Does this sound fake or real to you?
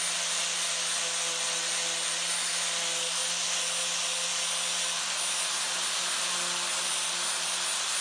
real